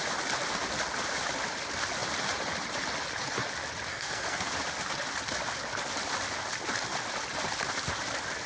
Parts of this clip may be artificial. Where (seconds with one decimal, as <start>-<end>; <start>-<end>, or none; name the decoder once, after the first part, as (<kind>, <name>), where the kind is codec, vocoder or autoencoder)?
3.9-4.5 (codec, SNAC)